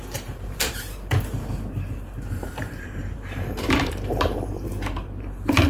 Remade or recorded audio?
remade